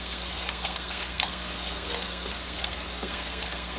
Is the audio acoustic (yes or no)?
no